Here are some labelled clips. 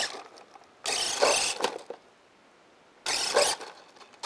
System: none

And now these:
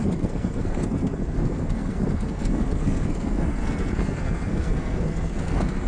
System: codec, SNAC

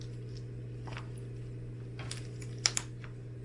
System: none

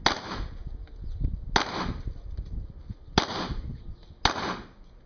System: none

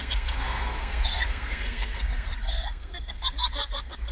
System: codec, SNAC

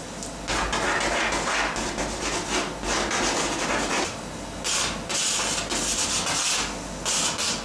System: none